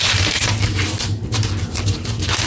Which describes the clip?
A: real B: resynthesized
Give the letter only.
B